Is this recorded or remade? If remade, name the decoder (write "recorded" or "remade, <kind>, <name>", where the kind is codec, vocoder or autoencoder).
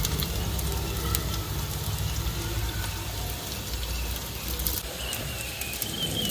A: recorded